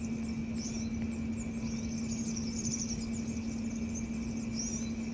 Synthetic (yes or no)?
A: no